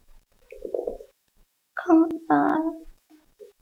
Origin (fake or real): fake